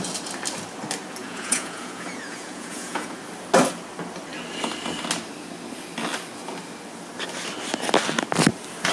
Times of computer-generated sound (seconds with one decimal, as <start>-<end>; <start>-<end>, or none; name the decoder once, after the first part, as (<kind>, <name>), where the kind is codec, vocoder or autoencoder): 1.2-3.2 (vocoder, Vocos)